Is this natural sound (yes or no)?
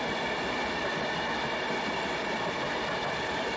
yes